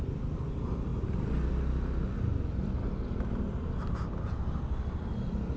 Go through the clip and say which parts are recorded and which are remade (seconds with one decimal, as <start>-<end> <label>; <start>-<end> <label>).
0.0-5.6 recorded

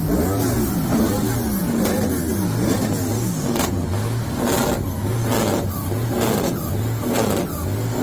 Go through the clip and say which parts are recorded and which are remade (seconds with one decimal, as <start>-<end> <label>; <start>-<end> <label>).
0.0-8.0 recorded

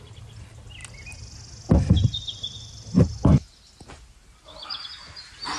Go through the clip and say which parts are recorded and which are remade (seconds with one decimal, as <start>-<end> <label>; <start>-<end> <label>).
0.0-5.6 recorded